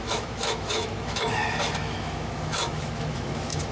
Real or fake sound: fake